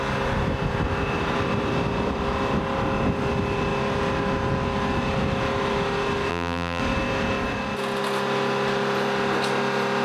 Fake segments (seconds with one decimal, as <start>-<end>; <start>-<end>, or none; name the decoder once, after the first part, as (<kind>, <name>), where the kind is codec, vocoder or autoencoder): 6.3-6.8 (vocoder, BigVGAN v2)

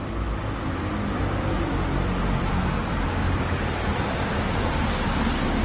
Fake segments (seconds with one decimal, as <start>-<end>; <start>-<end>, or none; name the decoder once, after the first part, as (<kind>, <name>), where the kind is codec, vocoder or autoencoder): 3.2-4.7 (vocoder, BigVGAN v2)

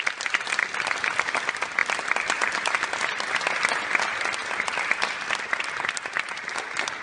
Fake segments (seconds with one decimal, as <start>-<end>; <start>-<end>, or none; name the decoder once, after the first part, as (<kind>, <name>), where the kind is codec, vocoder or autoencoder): none

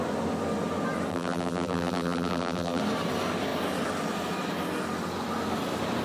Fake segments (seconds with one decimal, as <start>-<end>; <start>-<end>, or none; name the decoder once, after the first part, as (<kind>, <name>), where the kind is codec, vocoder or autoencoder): 1.1-2.8 (vocoder, BigVGAN v2)

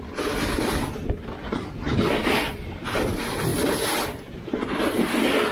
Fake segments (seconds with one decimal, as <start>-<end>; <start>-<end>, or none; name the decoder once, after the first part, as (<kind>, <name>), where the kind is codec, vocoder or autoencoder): 3.5-4.0 (vocoder, BigVGAN v2)

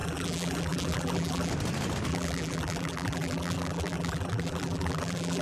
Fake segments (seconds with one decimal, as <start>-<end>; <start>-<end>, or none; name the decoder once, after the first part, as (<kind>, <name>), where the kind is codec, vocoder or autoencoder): 0.0-1.5 (vocoder, BigVGAN v2); 2.1-5.4

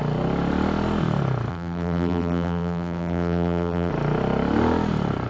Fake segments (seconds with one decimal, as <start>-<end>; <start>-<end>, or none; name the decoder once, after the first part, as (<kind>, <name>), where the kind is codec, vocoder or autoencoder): 1.5-3.9 (vocoder, BigVGAN v2)